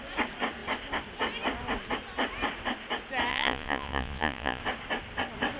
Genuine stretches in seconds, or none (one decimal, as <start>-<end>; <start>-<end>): 0.0-3.3; 4.6-5.6